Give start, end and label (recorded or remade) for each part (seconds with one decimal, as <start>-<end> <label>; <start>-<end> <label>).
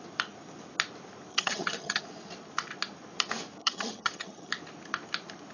0.0-1.3 recorded; 1.3-2.0 remade; 2.0-3.6 recorded; 3.6-4.5 remade; 4.5-5.5 recorded